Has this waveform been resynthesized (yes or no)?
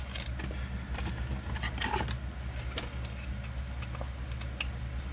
no